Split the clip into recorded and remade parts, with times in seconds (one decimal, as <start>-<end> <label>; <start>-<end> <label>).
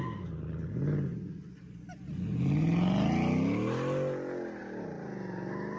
0.0-5.8 recorded